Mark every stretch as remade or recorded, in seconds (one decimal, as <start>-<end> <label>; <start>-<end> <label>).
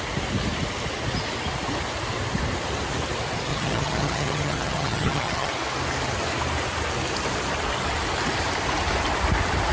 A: 0.0-3.5 recorded; 3.5-5.5 remade; 5.5-9.7 recorded